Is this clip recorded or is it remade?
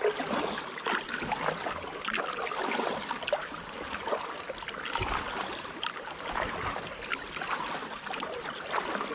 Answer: recorded